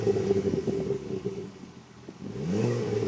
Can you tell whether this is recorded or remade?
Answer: remade